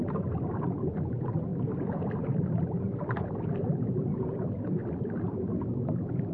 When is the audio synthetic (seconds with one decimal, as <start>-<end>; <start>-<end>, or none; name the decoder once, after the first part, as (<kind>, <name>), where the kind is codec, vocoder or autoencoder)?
none